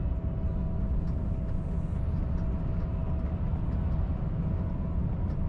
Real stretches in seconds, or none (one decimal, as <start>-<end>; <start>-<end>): 0.0-5.5